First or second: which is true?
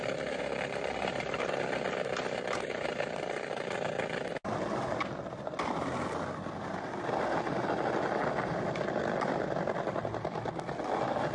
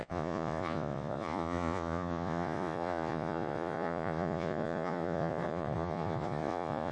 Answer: first